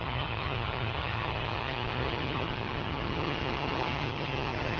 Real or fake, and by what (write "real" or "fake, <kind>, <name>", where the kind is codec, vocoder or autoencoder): fake, vocoder, HiFi-GAN